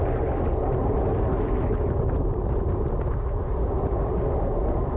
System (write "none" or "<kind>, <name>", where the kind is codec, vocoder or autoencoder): none